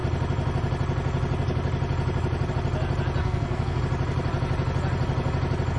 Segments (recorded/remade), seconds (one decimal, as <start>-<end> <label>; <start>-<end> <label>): 0.0-3.2 recorded; 3.2-3.8 remade; 3.8-5.8 recorded